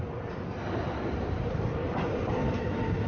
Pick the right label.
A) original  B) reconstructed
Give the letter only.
A